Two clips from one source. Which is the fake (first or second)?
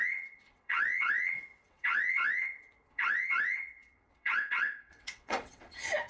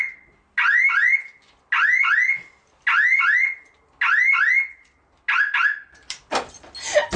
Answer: first